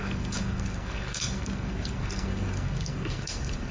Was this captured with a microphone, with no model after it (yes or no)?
no